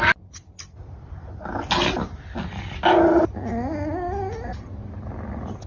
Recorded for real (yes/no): yes